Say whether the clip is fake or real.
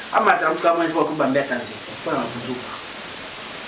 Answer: real